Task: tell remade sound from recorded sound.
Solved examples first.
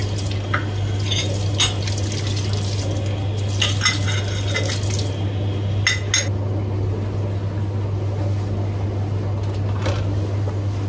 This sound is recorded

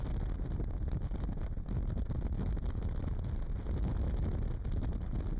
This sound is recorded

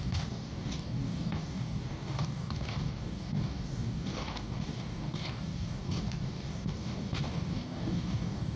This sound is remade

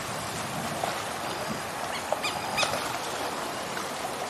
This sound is recorded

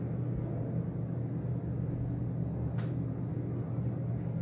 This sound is recorded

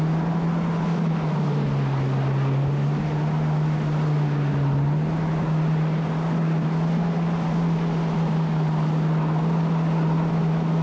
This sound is recorded